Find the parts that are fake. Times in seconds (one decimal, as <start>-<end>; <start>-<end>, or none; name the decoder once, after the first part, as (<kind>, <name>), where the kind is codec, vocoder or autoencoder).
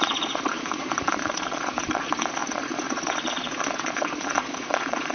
0.0-5.1 (vocoder, Vocos)